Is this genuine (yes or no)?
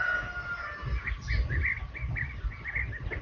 yes